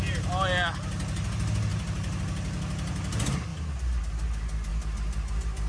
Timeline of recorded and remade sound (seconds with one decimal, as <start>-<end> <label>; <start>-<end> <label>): 0.0-5.7 recorded